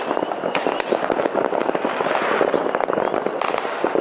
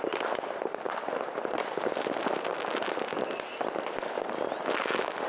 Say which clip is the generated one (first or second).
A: second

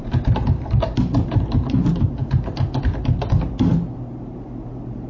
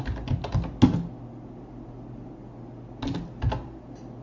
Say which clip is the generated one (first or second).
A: first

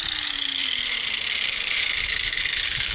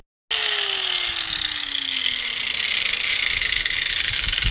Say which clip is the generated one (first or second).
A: first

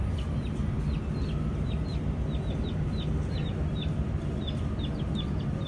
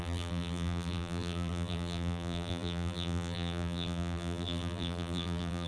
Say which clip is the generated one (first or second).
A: second